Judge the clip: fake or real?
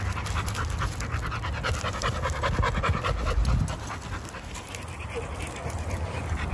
real